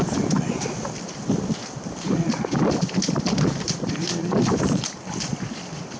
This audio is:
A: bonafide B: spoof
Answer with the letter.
B